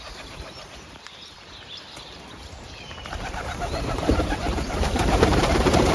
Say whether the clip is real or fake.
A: fake